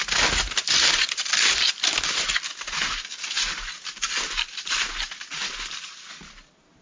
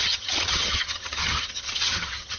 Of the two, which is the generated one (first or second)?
second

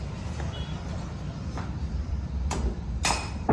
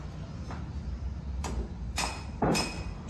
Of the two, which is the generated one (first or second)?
first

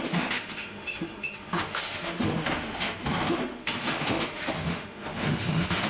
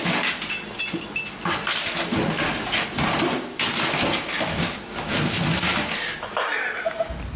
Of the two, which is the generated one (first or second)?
first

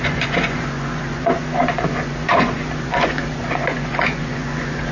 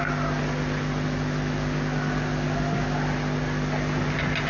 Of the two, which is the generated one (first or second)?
first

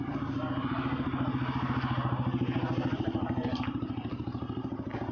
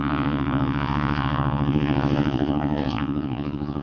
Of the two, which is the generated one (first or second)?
second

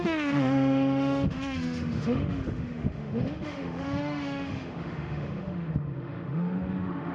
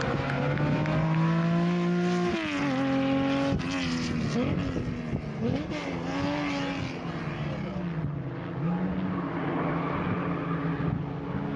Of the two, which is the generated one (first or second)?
first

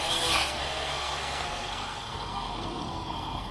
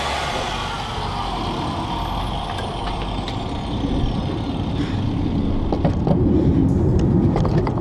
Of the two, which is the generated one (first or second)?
first